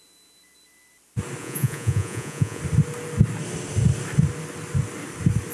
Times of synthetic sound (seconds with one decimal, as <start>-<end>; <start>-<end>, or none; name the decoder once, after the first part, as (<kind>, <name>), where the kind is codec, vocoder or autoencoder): 1.4-2.6 (vocoder, Vocos)